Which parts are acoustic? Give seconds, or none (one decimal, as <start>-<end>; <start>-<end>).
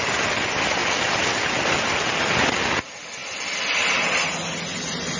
0.0-5.2